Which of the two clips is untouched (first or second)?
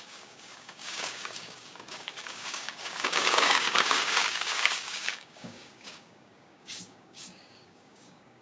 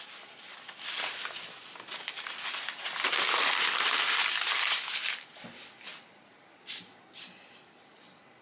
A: second